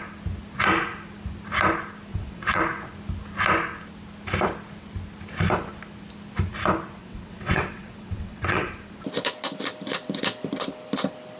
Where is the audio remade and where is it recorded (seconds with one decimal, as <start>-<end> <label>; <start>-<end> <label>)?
0.0-2.1 recorded; 2.1-2.6 remade; 2.6-7.0 recorded; 7.0-8.7 remade; 8.7-11.4 recorded